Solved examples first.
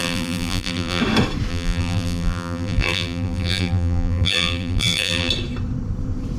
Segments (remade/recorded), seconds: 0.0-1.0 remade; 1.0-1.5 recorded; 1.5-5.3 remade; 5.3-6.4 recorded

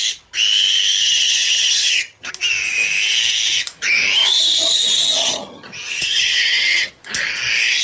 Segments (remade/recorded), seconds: 0.0-1.0 recorded; 1.0-2.3 remade; 2.3-4.2 recorded; 4.2-4.8 remade; 4.8-5.2 recorded; 5.2-6.9 remade; 6.9-7.8 recorded

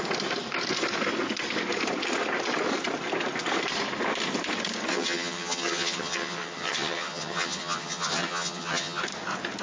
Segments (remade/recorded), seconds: 0.0-4.9 recorded; 4.9-9.0 remade; 9.0-9.6 recorded

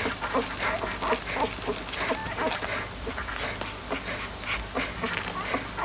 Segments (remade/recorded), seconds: 0.0-5.8 recorded

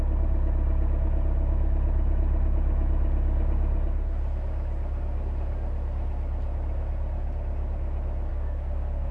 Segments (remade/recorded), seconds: 0.0-8.3 recorded; 8.3-9.1 remade

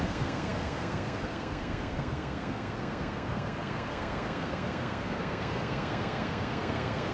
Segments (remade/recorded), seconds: 0.0-7.1 remade